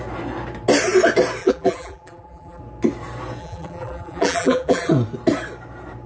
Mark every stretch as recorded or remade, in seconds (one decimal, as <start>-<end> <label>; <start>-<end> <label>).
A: 0.0-1.4 recorded; 1.4-2.6 remade; 2.6-3.4 recorded; 3.4-4.9 remade; 4.9-6.1 recorded